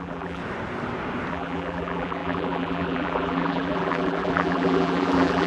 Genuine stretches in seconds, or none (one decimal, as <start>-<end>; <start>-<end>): 0.4-1.3